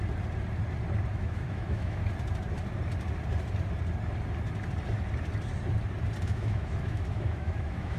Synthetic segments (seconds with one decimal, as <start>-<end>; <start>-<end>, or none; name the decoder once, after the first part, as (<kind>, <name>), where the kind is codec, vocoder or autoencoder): 1.1-2.0 (autoencoder, DAC-VAE); 6.2-8.0